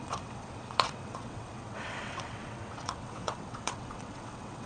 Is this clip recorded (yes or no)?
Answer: no